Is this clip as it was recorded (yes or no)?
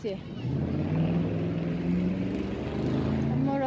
yes